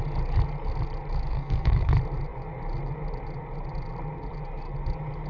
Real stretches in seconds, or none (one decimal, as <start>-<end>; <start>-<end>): 0.0-1.3; 1.9-5.3